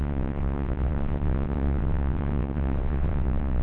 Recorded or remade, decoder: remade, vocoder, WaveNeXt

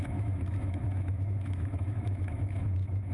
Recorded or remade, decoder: remade, autoencoder, DAC-VAE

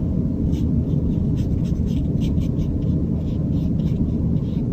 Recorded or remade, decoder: recorded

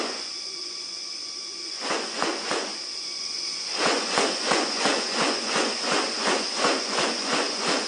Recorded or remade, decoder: remade, vocoder, Vocos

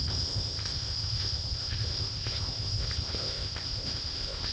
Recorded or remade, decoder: remade, codec, ZipCodec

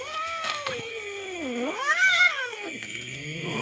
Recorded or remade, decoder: remade, codec, SNAC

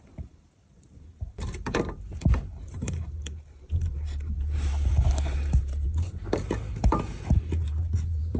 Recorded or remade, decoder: remade, vocoder, BigVGAN v2